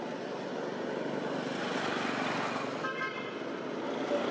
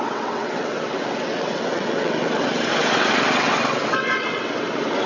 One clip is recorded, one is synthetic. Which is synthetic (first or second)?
second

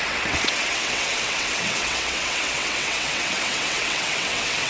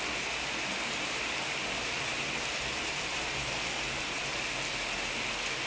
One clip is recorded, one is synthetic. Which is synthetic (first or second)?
first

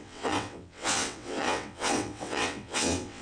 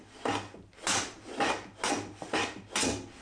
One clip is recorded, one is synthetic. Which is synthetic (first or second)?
first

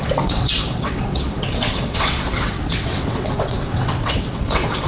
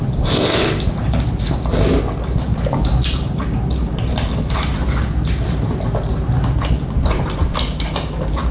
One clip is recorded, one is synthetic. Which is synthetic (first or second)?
first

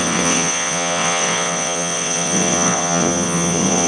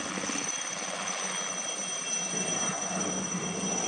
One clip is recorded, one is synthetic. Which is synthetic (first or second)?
first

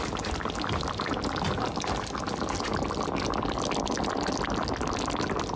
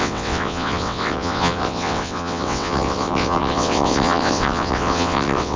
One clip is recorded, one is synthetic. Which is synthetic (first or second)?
second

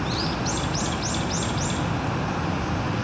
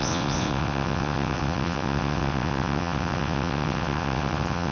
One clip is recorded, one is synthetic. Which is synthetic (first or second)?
second